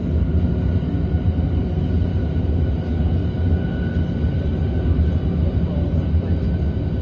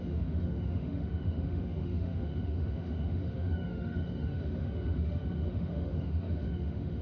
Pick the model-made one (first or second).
second